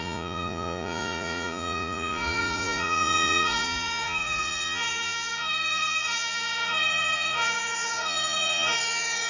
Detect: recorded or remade remade